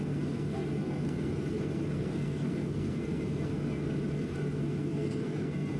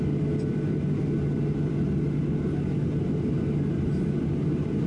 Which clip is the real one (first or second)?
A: second